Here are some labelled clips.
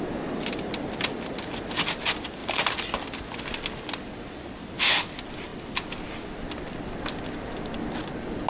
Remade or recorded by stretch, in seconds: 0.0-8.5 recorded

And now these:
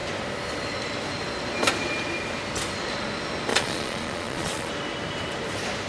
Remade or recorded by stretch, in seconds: 0.0-3.5 recorded; 3.5-4.7 remade; 4.7-5.9 recorded

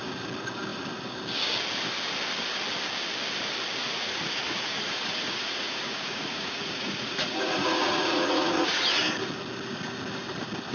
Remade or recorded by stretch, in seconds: 0.0-3.8 recorded; 3.8-9.0 remade; 9.0-10.7 recorded

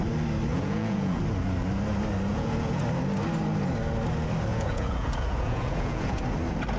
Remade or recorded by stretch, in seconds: 0.0-0.5 recorded; 0.5-1.2 remade; 1.2-2.3 recorded; 2.3-2.8 remade; 2.8-4.5 recorded; 4.5-6.2 remade; 6.2-6.8 recorded

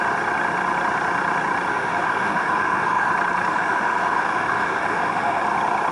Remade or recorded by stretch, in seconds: 0.0-1.7 recorded; 1.7-3.1 remade; 3.1-3.5 recorded; 3.5-5.4 remade; 5.4-5.9 recorded